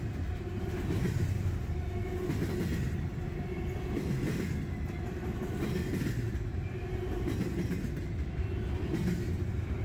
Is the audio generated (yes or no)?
no